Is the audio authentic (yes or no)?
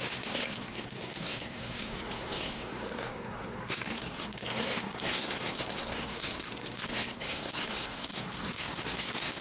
no